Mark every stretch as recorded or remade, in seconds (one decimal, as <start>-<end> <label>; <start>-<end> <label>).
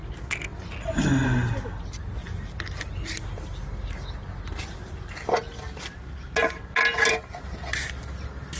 0.0-8.6 recorded